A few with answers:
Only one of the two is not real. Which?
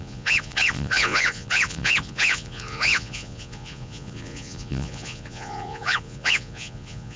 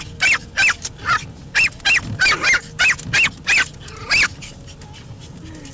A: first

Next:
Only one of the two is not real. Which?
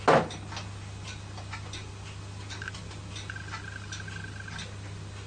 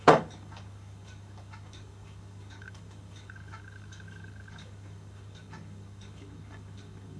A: second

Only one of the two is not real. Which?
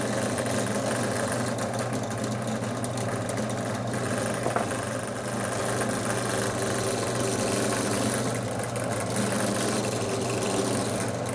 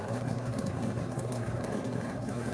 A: second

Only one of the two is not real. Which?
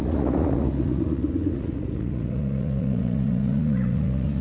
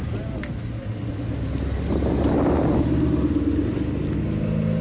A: first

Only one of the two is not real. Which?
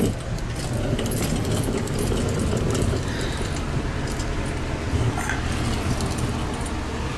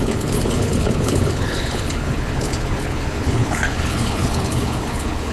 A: second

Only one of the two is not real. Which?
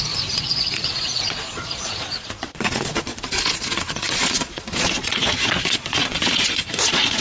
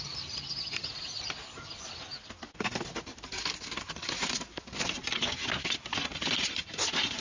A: first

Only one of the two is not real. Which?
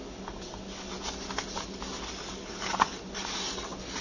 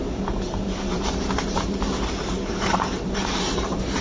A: second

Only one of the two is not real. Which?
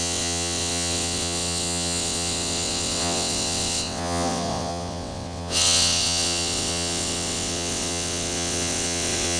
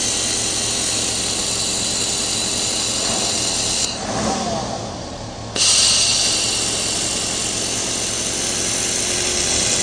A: first